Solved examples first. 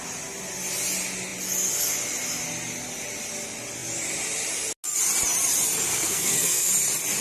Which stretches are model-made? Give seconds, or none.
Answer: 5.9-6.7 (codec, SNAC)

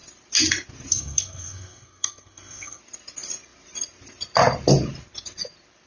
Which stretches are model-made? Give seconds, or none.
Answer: 0.9-2.8 (codec, SNAC)

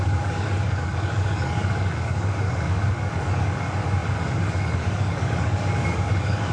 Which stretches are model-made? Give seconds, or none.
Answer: 0.0-6.5 (codec, DAC)

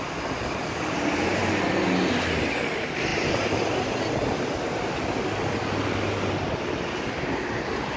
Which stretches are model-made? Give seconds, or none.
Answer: none

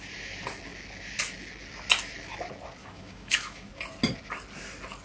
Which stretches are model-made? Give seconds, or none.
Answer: 2.8-3.7 (autoencoder, DAC-VAE)

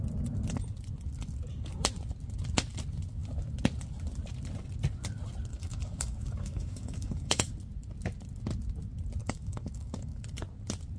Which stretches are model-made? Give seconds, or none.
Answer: 5.5-7.5 (codec, DAC); 9.2-10.2

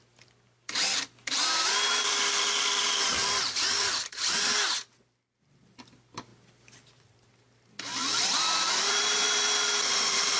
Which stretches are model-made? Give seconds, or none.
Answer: 0.0-10.4 (vocoder, BigVGAN v2)